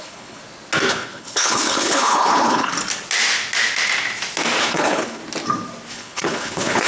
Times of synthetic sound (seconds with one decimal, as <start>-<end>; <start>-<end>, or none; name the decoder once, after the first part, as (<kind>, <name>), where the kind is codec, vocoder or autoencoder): 0.0-0.4 (codec, HILCodec); 0.9-2.7; 4.6-5.2; 5.9-6.9